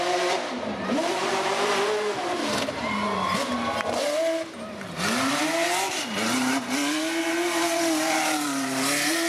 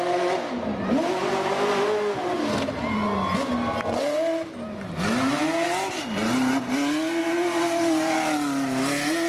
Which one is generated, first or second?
first